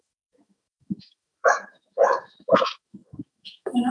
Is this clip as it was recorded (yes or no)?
no